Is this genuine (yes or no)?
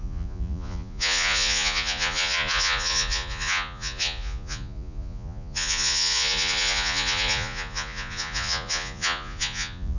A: no